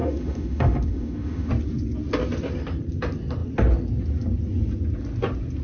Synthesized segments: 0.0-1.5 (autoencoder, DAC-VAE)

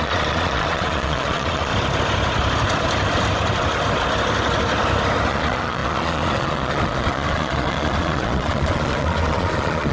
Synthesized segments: 0.0-1.7 (vocoder, Vocos); 5.3-9.9